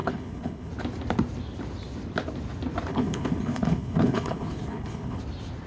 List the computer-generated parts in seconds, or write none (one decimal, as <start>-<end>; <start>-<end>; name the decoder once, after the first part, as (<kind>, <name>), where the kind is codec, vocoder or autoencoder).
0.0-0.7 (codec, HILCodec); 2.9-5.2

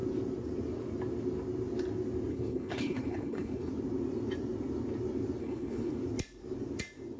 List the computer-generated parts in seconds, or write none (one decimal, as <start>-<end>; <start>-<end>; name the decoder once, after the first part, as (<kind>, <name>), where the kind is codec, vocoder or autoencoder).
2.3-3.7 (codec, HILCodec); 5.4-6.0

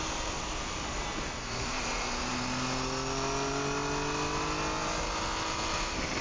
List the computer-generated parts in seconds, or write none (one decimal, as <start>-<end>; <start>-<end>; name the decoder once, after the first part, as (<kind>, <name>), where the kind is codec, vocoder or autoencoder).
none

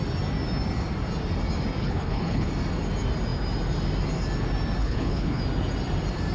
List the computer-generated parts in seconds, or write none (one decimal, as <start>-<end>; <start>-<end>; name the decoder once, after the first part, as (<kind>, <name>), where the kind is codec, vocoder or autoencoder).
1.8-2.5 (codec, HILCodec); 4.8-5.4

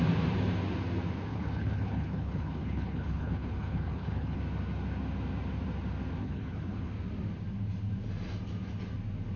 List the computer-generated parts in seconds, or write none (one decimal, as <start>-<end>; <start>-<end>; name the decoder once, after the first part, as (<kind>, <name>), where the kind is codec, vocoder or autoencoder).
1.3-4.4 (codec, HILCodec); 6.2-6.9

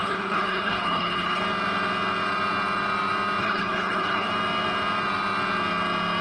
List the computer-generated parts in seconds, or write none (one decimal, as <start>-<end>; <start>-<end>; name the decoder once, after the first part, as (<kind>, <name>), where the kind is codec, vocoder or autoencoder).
0.0-1.4 (codec, HILCodec); 3.4-4.3

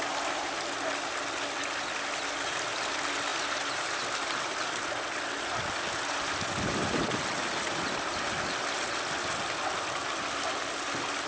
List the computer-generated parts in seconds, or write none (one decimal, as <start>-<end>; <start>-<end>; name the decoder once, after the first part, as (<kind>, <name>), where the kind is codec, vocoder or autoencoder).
none